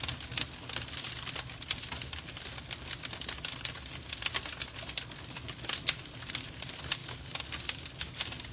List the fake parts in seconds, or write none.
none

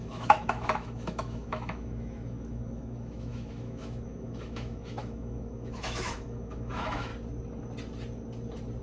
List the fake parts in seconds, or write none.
0.0-7.1 (autoencoder, DAC-VAE)

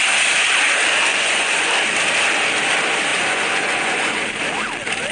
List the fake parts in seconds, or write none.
1.1-1.7 (vocoder, Vocos); 3.1-4.2

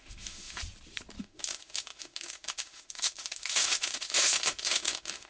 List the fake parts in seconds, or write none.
0.0-0.6 (autoencoder, DAC-VAE); 1.2-5.3

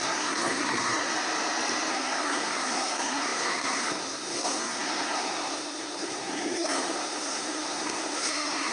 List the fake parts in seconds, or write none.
0.0-1.1 (codec, SNAC); 1.9-8.7

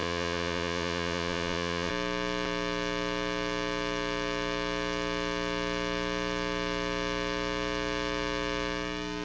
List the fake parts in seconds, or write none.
0.0-1.9 (vocoder, Vocos)

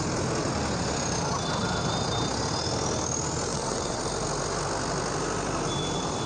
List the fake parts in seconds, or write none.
3.5-4.0 (vocoder, WaveNeXt)